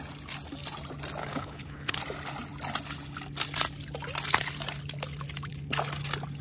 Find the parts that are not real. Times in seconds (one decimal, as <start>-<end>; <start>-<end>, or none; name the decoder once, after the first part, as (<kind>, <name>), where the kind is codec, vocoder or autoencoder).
1.2-2.0 (codec, HILCodec)